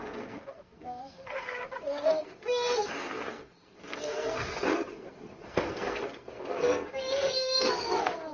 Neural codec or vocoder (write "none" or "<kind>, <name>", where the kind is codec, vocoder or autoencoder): codec, SNAC